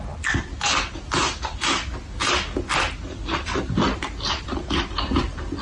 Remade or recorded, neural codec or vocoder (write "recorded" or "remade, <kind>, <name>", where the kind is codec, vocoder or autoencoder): recorded